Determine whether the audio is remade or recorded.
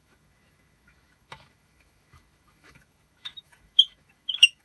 remade